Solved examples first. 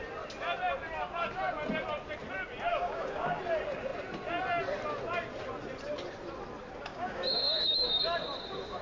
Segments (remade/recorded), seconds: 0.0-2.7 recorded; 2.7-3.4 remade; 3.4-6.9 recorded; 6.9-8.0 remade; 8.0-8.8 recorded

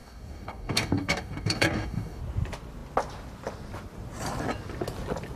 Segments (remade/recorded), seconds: 0.0-2.2 remade; 2.2-5.4 recorded